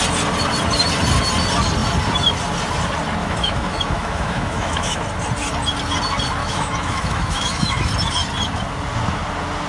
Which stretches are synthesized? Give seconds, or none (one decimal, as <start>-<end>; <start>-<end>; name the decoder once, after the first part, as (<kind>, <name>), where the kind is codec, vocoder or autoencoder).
3.2-5.0 (autoencoder, DAC-VAE); 6.4-7.9